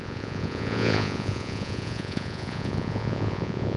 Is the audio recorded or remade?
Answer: remade